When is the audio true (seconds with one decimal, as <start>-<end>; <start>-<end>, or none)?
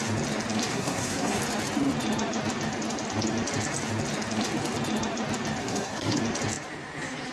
0.0-0.7; 1.4-5.6; 6.2-7.3